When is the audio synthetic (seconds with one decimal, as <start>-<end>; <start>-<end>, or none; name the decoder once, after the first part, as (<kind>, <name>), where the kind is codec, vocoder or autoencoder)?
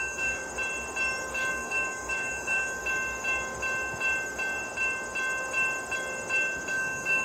0.0-0.4 (codec, DAC); 1.5-2.8; 6.7-7.2